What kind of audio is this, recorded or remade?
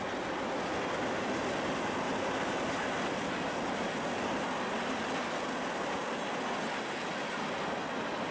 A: recorded